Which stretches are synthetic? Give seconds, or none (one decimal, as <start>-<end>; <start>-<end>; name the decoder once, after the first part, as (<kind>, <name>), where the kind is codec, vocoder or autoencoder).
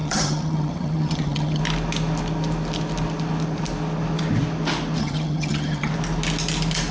0.0-1.6 (vocoder, HiFi-GAN); 5.0-5.9